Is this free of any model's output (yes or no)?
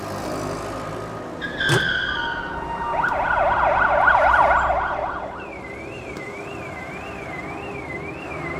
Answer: yes